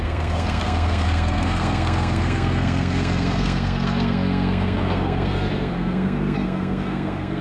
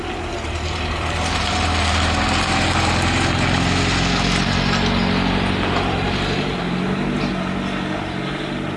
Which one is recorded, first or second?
second